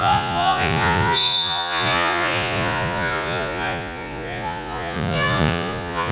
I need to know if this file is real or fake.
fake